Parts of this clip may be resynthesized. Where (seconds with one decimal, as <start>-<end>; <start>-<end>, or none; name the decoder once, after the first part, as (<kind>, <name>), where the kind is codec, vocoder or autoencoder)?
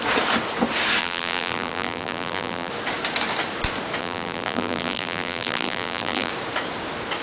1.0-2.7 (vocoder, BigVGAN v2); 4.0-6.3